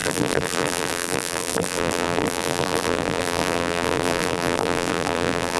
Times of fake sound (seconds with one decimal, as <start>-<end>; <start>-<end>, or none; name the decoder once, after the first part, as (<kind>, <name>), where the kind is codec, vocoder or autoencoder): 0.0-5.6 (vocoder, BigVGAN v2)